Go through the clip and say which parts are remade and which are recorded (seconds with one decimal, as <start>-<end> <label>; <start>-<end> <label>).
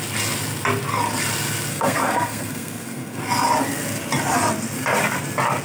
0.0-1.7 recorded; 1.7-3.2 remade; 3.2-5.6 recorded